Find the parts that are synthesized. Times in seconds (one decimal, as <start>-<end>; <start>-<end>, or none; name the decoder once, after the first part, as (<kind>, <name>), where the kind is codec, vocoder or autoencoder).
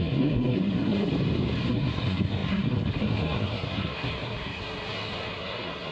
0.0-1.1 (codec, SNAC); 1.7-5.9